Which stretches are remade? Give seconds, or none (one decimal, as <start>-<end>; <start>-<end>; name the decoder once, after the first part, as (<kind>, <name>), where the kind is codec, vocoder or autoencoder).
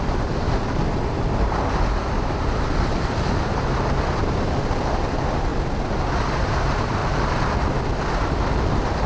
0.0-5.5 (vocoder, BigVGAN v2); 6.1-7.0; 8.1-9.1